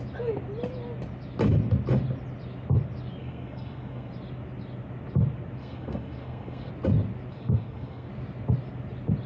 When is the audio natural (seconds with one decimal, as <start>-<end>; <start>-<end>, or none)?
0.0-3.2; 4.1-5.6; 6.7-7.3; 8.1-9.3